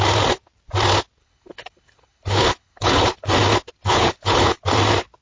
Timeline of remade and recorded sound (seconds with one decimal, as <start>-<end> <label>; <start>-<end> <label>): 0.0-1.2 recorded; 1.2-3.3 remade; 3.3-3.8 recorded; 3.8-4.6 remade; 4.6-5.2 recorded